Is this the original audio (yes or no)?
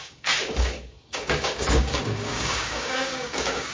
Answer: no